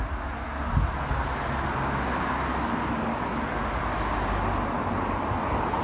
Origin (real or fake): real